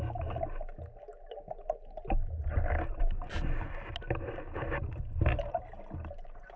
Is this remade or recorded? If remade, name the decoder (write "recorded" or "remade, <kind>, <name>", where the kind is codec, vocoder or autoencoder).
recorded